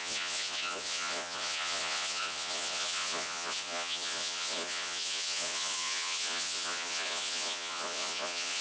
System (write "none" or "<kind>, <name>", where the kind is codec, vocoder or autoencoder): vocoder, Vocos